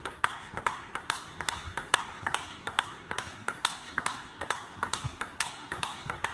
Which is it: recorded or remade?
remade